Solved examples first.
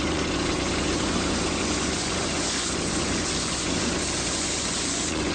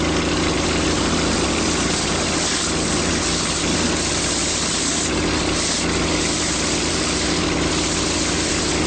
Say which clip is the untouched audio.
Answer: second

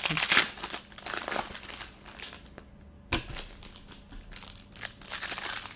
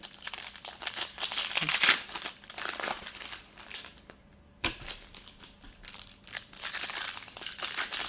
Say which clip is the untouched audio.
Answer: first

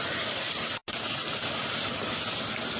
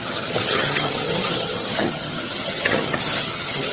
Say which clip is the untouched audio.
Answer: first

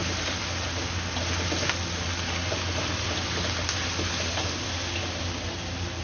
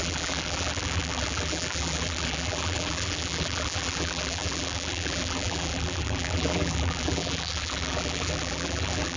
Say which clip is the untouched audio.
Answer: first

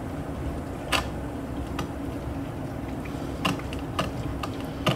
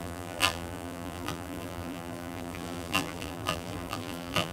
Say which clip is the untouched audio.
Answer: first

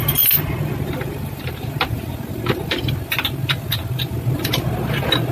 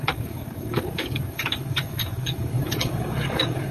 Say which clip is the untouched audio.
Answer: first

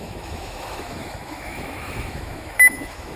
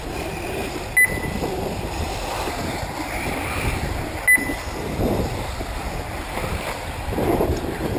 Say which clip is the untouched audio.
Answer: second